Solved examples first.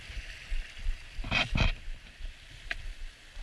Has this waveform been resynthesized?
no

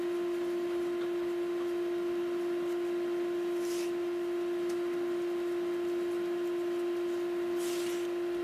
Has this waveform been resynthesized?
no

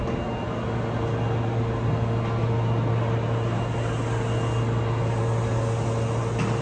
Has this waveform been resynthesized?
no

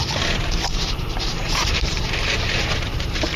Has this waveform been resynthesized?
yes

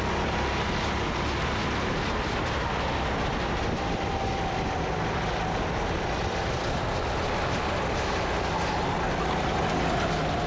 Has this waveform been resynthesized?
no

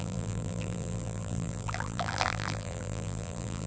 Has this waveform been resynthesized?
yes